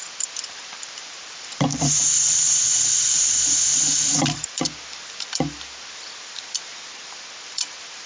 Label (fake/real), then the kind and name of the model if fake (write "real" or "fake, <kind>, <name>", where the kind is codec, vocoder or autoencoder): fake, vocoder, BigVGAN v2